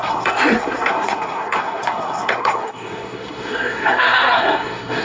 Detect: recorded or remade remade